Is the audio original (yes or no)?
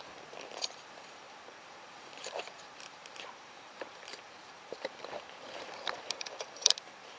no